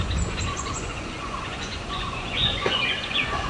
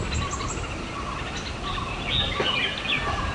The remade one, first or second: first